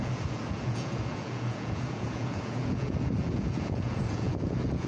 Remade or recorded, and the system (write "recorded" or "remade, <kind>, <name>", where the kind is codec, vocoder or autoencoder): remade, vocoder, Vocos